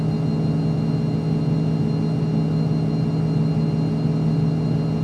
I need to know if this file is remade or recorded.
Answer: recorded